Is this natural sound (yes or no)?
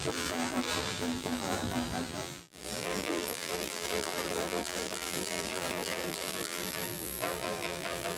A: no